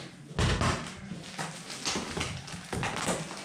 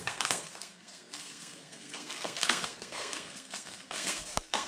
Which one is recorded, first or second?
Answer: first